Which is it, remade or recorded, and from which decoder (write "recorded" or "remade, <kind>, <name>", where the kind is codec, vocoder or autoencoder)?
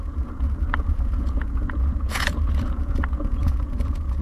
remade, vocoder, Vocos